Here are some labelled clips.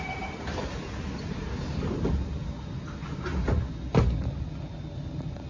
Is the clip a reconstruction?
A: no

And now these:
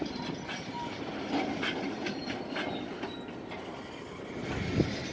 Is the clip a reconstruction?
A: no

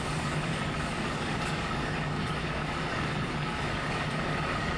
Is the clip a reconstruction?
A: yes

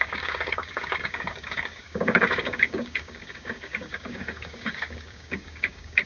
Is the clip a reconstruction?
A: yes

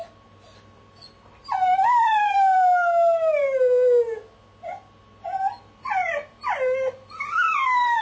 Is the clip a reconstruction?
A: no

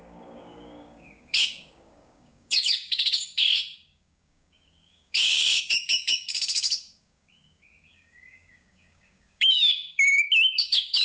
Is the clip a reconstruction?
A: yes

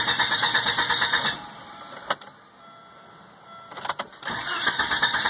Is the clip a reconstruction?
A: no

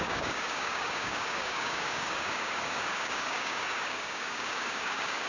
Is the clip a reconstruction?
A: yes